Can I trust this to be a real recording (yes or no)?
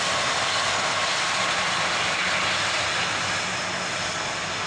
yes